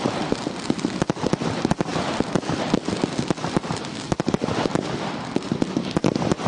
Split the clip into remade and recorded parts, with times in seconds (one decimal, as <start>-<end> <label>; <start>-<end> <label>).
0.0-6.5 recorded